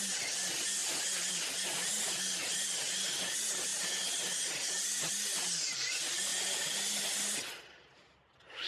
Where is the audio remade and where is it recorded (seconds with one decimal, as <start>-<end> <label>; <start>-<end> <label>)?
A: 0.0-3.7 recorded; 3.7-5.4 remade; 5.4-8.7 recorded